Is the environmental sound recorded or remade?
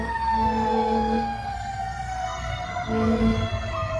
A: remade